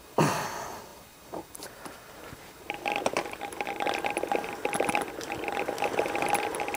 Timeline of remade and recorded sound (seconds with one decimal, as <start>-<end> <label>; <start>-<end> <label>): 0.0-6.8 remade